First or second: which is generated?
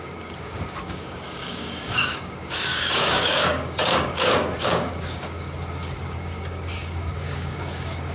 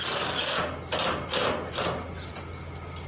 first